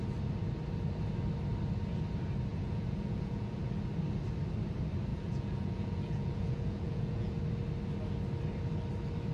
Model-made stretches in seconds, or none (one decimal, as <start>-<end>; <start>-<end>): 2.5-3.6; 5.1-7.4

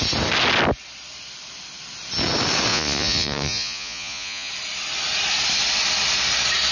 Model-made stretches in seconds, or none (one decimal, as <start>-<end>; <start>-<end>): 2.7-4.5

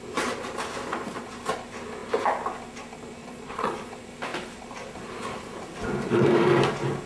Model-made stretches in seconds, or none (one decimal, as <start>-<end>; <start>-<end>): 0.9-1.4; 3.2-3.9

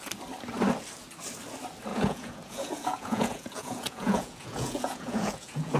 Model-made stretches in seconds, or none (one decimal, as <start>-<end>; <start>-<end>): 1.9-5.8

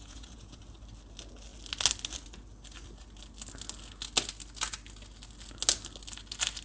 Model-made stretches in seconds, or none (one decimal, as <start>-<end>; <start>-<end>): 0.0-0.6